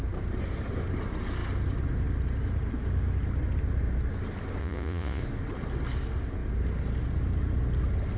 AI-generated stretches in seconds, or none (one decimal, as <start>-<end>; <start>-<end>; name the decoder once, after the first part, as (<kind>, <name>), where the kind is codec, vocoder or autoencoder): 4.6-5.2 (vocoder, Vocos)